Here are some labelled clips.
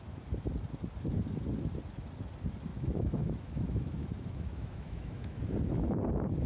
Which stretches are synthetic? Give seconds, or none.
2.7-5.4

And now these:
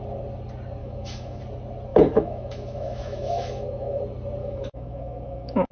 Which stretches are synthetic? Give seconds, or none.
0.8-1.4; 1.9-4.0; 4.4-5.7

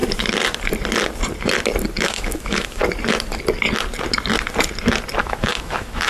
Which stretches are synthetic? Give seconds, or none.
2.0-2.8; 5.2-6.1

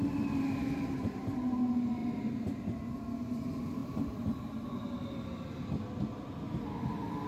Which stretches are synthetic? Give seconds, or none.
none